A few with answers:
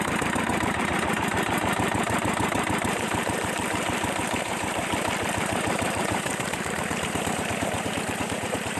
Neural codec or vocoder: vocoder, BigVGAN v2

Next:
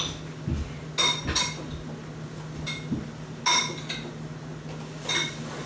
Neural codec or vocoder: none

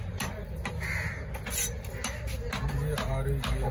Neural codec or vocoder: none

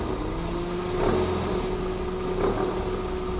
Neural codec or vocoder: none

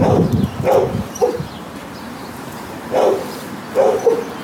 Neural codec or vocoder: vocoder, BigVGAN v2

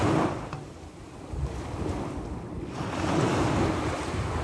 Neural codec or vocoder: none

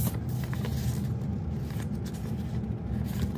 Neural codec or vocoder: none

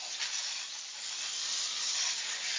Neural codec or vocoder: none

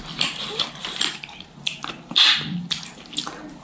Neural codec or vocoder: none